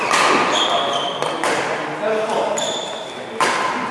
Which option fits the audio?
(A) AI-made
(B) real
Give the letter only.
B